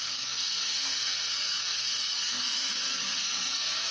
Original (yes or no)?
no